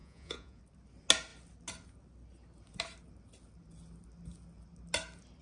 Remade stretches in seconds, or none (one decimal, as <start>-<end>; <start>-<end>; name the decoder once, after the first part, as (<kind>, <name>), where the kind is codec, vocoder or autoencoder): 0.0-0.6 (vocoder, Vocos)